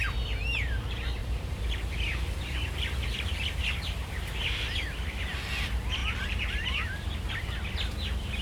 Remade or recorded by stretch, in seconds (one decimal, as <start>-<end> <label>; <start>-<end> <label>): 0.0-1.2 recorded; 1.2-3.3 remade; 3.3-6.0 recorded; 6.0-7.3 remade; 7.3-8.4 recorded